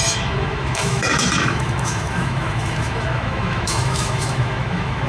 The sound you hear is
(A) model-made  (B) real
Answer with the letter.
A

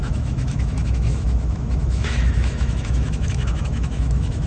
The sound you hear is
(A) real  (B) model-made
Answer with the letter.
B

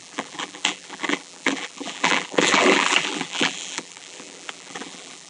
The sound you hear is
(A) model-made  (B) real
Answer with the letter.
A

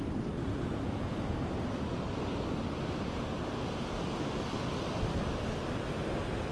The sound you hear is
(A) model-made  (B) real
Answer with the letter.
B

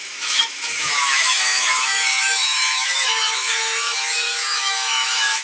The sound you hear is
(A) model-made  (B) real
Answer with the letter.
A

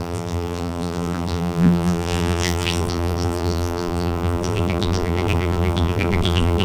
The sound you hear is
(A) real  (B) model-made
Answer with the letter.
B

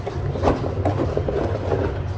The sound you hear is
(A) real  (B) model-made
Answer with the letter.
A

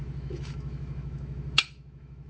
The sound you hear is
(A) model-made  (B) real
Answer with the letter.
A